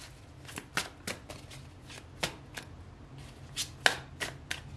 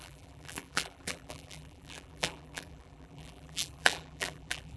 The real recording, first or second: first